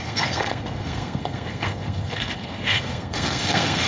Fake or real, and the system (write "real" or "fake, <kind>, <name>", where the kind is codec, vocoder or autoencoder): fake, codec, SNAC